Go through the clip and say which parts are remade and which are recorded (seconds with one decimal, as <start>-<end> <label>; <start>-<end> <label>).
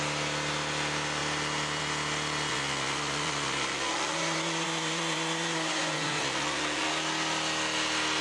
0.0-2.5 recorded; 2.5-6.9 remade; 6.9-8.2 recorded